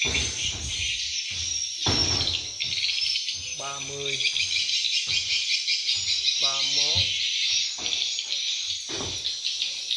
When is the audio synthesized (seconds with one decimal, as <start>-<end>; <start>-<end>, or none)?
none